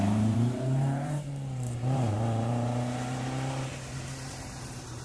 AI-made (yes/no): yes